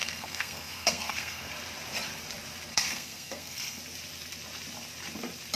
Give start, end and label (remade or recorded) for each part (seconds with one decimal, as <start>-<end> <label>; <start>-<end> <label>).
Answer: 0.0-1.5 remade; 1.5-2.7 recorded; 2.7-3.8 remade; 3.8-5.6 recorded